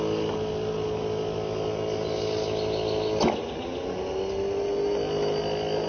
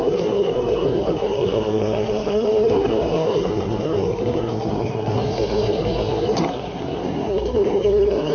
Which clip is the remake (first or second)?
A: second